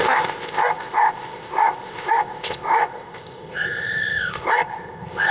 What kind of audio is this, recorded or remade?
remade